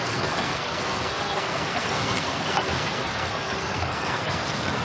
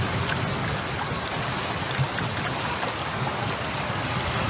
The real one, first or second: second